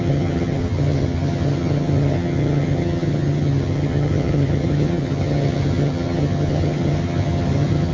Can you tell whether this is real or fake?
fake